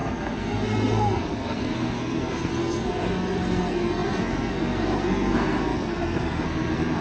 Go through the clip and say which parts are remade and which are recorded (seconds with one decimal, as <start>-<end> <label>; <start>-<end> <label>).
0.0-7.0 remade